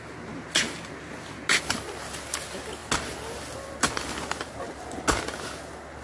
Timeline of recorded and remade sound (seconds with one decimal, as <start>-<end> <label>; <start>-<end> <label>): 0.0-6.0 recorded